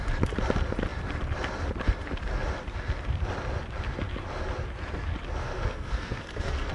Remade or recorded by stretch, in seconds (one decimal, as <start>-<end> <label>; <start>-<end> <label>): 0.0-5.4 recorded; 5.4-6.7 remade